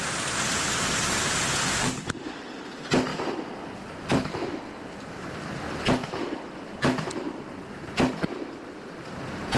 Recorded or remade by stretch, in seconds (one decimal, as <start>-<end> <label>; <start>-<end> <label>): 0.0-3.1 recorded; 3.1-5.2 remade; 5.2-6.0 recorded; 6.0-6.6 remade; 6.6-9.0 recorded; 9.0-9.6 remade